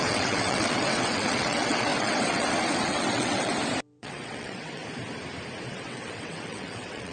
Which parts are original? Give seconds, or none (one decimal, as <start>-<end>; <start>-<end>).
3.5-4.0; 4.8-5.7